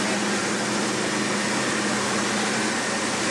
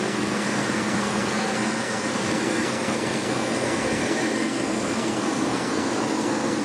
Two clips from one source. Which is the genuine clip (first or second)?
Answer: first